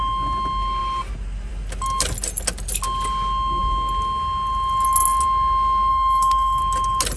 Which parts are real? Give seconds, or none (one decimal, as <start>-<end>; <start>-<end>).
0.0-5.9; 6.6-7.2